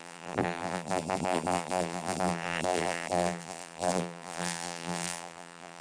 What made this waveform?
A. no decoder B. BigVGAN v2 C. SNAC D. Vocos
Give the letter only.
B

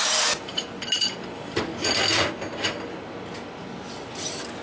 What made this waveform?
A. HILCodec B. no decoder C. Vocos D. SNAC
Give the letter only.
B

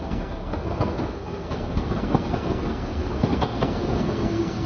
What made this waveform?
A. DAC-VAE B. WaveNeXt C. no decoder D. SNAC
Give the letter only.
D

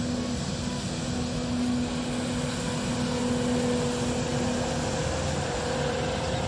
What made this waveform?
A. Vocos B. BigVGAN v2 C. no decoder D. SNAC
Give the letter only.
C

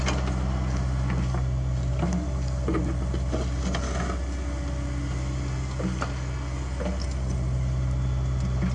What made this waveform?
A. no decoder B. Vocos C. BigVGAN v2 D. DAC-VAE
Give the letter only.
A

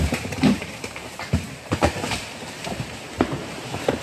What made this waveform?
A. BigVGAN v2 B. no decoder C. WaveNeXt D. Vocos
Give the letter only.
A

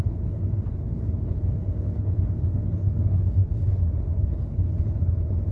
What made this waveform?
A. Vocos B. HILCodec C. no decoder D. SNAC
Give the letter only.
B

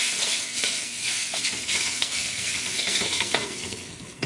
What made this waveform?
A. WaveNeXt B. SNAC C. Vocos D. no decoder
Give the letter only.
B